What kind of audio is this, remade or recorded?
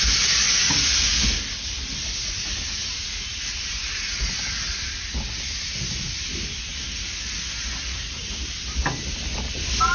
recorded